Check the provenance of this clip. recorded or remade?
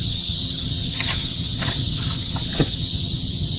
remade